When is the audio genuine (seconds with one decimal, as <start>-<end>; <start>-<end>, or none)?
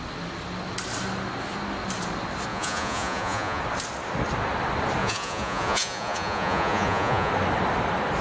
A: 0.0-2.5; 3.6-5.0; 7.3-8.2